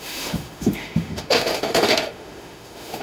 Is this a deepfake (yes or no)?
yes